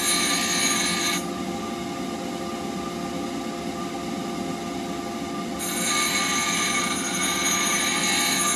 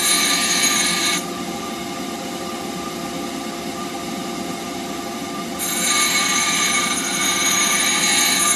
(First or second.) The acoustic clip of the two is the first